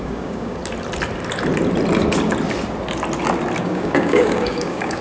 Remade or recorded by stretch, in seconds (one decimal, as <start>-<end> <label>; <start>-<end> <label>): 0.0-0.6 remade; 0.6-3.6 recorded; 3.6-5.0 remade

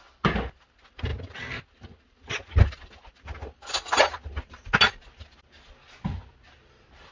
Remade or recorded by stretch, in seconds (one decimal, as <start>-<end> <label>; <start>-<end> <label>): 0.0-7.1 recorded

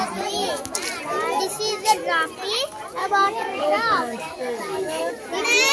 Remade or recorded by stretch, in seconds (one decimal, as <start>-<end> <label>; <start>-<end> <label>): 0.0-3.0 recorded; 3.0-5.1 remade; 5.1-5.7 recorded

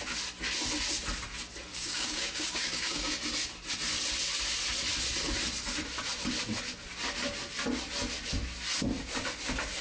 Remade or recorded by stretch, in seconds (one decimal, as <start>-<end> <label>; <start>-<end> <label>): 0.0-1.7 recorded; 1.7-3.1 remade; 3.1-9.8 recorded

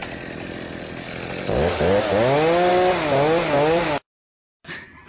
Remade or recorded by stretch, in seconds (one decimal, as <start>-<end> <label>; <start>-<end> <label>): 0.0-5.1 recorded

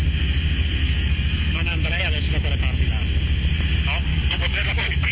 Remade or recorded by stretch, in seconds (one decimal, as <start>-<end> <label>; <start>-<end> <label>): 0.0-0.8 recorded; 0.8-2.0 remade; 2.0-4.1 recorded; 4.1-5.1 remade